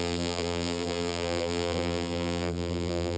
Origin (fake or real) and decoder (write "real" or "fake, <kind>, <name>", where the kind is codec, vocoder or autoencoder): fake, vocoder, BigVGAN v2